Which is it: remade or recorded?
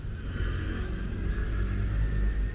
recorded